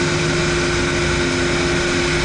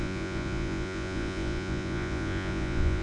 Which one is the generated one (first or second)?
second